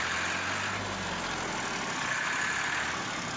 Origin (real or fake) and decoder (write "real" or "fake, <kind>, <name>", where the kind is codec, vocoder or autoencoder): real